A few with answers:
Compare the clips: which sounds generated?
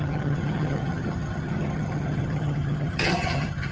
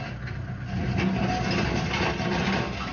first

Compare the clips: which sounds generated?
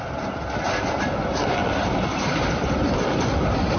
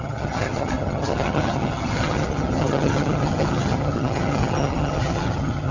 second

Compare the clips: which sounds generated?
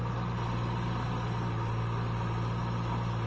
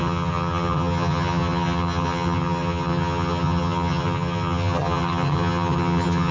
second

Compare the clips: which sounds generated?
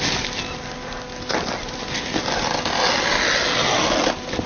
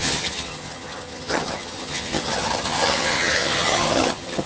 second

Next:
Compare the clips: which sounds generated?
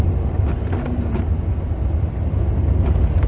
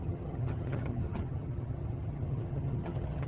second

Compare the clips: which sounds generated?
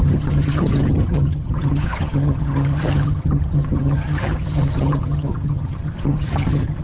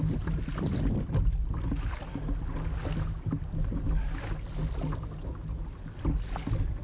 first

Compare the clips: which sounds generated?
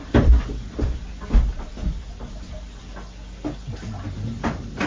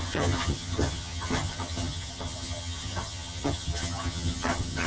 second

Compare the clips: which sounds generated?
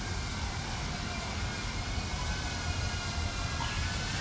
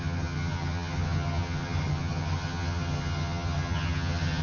second